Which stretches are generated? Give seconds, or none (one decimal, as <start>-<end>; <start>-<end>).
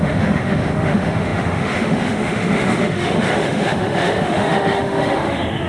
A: 0.0-5.7